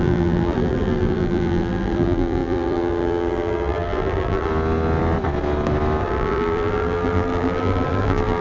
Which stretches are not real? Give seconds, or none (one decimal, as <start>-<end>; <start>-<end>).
0.0-4.5; 6.0-8.4